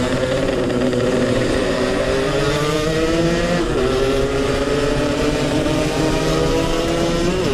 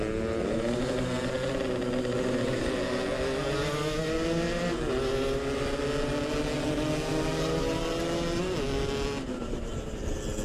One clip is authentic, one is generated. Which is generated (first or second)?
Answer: first